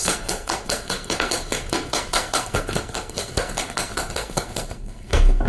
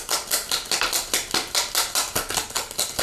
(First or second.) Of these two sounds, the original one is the second